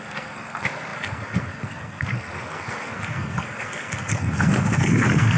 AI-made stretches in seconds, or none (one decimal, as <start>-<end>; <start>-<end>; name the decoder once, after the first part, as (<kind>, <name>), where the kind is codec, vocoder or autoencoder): 0.0-5.4 (codec, SNAC)